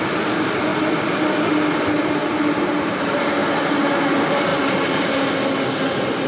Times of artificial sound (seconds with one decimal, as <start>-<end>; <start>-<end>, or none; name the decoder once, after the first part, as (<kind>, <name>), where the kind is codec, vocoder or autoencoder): 0.0-0.7 (vocoder, BigVGAN v2); 2.0-3.4; 4.0-4.5